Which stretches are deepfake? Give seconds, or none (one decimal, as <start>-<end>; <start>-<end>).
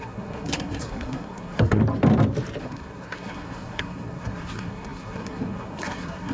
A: 0.0-1.8; 2.6-6.3